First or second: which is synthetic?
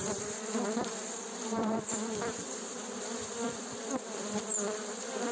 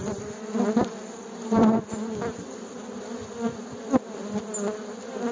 first